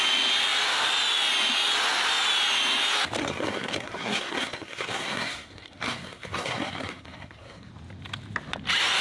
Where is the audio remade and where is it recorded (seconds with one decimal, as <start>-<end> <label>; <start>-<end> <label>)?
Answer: 0.0-3.2 recorded; 3.2-7.7 remade; 7.7-9.0 recorded